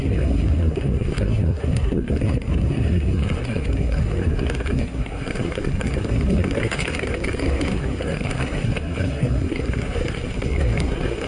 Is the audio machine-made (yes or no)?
yes